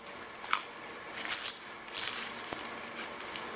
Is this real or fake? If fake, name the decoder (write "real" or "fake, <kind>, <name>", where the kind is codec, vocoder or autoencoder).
real